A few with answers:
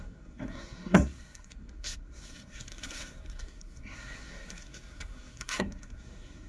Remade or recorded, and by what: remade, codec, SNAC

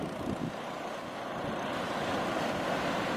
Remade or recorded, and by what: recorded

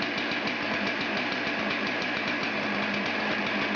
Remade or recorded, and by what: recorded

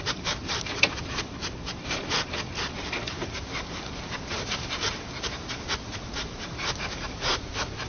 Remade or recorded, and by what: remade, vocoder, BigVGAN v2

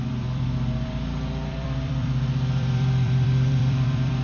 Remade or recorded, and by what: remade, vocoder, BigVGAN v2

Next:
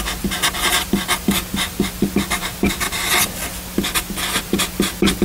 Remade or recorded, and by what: recorded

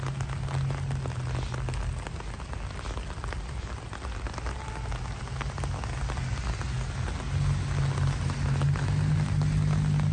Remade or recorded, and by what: recorded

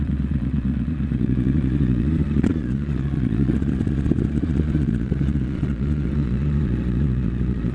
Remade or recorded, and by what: remade, vocoder, Vocos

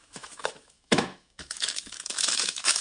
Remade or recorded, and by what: remade, autoencoder, DAC-VAE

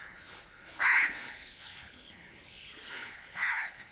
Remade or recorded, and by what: remade, codec, HILCodec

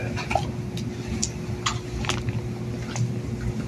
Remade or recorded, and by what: recorded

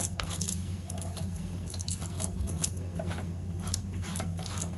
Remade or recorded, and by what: remade, codec, SNAC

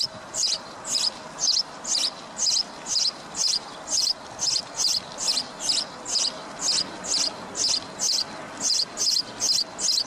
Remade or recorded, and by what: recorded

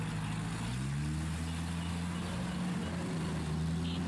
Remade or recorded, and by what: recorded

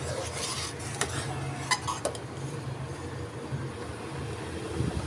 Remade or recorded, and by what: recorded